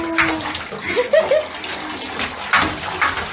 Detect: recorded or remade recorded